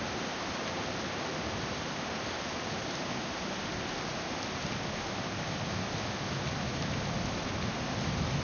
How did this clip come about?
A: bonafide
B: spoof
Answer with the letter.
A